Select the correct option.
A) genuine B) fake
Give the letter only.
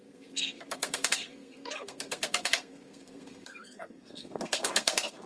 B